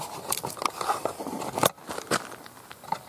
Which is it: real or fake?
real